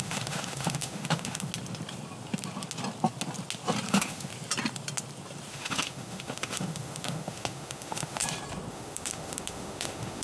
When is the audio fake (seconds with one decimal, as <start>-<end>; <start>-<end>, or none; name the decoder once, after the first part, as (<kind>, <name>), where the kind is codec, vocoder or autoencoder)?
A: 0.0-1.5 (autoencoder, DAC-VAE); 3.9-4.3; 5.5-8.2; 8.7-10.2